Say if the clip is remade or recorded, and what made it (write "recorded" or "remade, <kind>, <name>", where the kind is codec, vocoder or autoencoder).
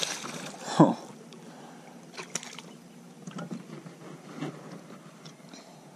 recorded